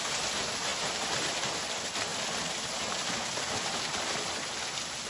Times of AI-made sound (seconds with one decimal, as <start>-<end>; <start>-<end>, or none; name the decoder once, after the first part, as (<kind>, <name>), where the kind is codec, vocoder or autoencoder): none